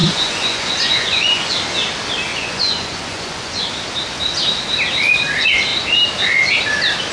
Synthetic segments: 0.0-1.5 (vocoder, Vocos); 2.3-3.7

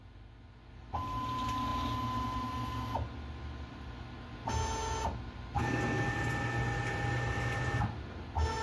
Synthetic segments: none

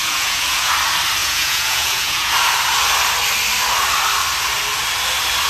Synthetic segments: 0.0-0.7 (vocoder, Vocos); 1.2-2.3

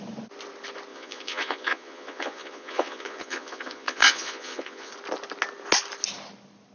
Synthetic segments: 0.9-4.9 (vocoder, Vocos)